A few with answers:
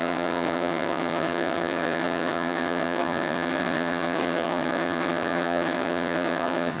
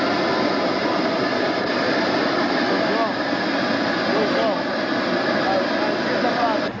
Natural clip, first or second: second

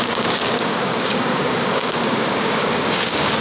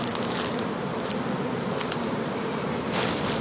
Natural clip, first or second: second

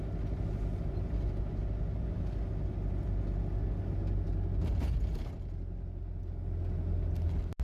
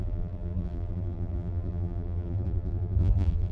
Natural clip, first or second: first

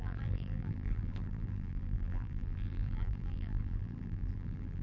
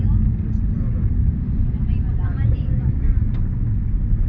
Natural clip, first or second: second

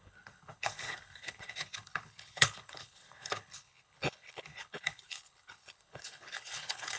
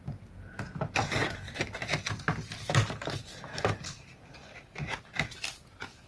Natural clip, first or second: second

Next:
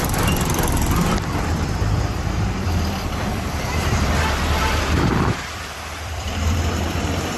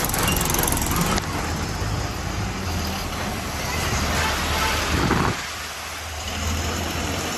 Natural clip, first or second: second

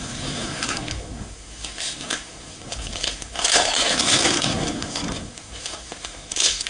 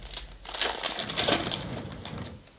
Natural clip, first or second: second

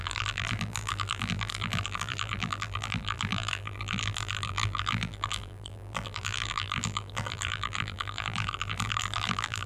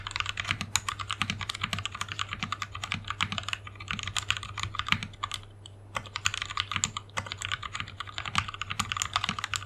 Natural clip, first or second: second